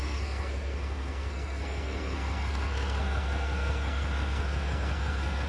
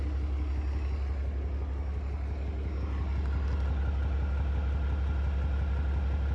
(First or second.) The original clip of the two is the second